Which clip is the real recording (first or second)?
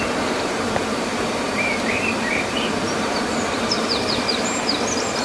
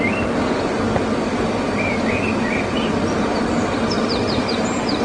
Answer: second